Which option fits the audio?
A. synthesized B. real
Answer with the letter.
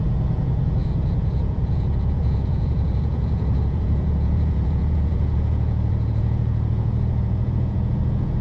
A